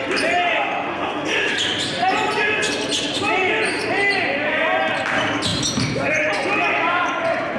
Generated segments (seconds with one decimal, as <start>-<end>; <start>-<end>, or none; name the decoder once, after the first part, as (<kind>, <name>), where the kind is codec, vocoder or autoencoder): 0.9-1.5 (codec, SNAC)